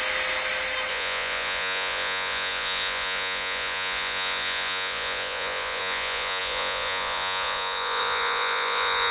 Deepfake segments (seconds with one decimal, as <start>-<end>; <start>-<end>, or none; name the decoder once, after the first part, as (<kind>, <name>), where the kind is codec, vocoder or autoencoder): 0.9-9.1 (vocoder, Vocos)